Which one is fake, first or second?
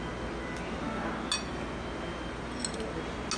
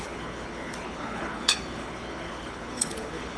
second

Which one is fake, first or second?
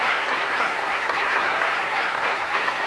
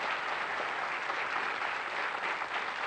first